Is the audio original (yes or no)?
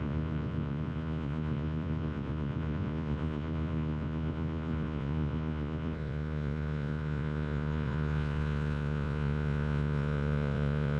no